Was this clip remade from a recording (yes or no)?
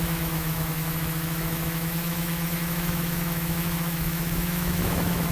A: yes